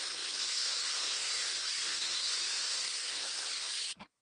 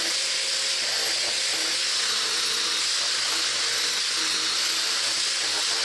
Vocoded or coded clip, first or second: first